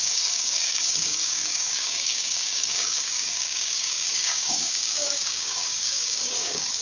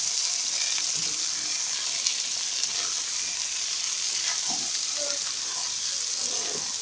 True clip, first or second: second